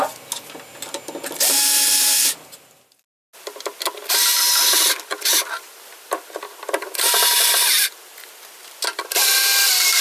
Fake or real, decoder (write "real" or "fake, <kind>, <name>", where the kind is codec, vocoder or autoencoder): real